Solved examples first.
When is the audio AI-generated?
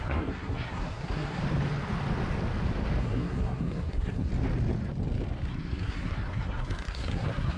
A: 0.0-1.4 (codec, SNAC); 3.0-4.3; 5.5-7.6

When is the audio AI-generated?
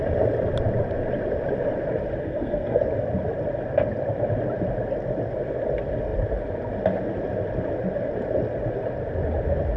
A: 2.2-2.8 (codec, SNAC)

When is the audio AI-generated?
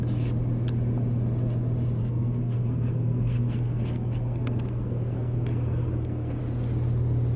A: 2.0-6.4 (codec, SNAC)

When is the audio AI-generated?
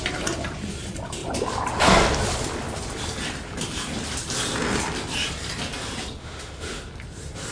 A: 6.2-6.8 (autoencoder, DAC-VAE)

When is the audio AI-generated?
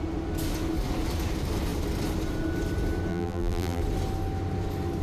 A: 3.1-3.8 (vocoder, BigVGAN v2)